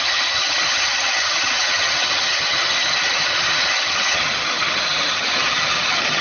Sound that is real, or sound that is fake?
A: fake